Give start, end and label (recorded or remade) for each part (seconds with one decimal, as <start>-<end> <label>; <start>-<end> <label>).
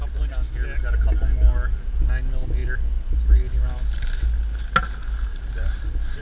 0.0-5.3 recorded; 5.3-6.2 remade